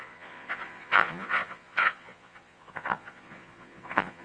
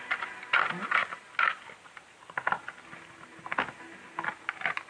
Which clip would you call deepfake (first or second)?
first